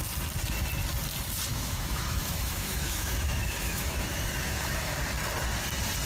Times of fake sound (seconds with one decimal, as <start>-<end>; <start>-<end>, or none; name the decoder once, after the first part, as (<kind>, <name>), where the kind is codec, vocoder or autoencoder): 1.5-5.0 (autoencoder, DAC-VAE)